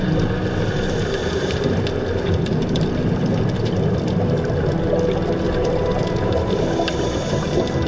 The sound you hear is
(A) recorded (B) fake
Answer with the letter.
A